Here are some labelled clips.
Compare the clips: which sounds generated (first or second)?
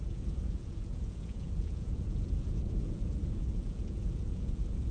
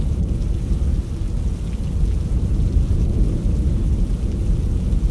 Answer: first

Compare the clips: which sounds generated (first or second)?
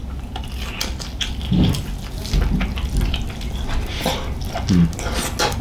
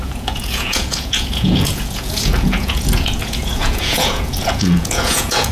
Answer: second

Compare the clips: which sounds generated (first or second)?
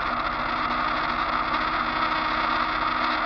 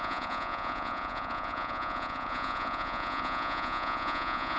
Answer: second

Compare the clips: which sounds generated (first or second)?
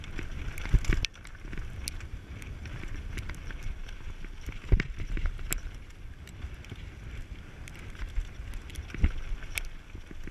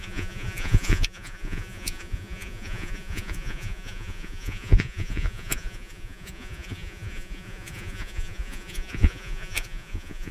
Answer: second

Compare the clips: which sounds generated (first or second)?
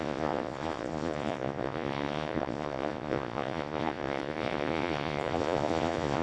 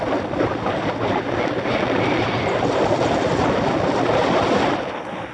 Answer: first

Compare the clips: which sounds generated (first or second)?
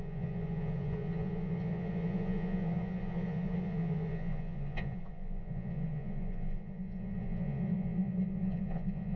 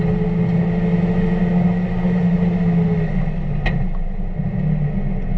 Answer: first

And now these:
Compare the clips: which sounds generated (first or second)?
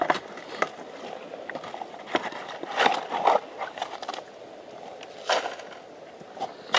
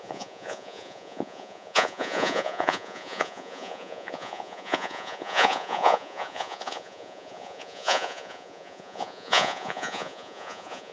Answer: second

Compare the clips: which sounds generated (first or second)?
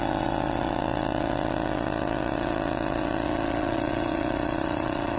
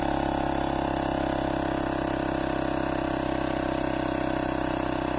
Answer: first